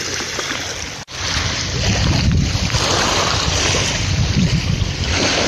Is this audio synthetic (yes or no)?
no